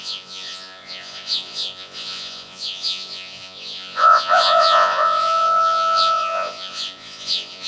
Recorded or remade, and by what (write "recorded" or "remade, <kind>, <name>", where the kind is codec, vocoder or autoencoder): remade, vocoder, Vocos